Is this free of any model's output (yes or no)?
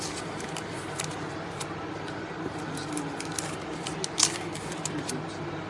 yes